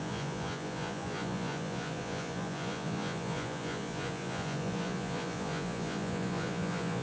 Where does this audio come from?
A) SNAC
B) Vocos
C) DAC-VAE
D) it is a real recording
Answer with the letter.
B